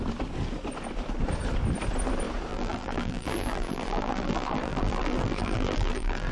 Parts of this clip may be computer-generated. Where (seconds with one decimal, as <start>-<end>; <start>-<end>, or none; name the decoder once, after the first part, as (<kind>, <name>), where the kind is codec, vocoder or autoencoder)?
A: 2.5-6.3 (vocoder, BigVGAN v2)